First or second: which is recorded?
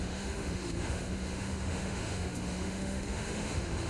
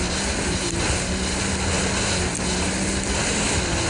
second